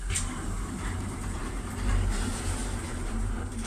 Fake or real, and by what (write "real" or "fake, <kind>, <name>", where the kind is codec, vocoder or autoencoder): fake, vocoder, BigVGAN v2